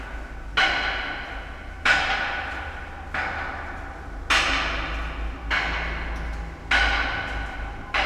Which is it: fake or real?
real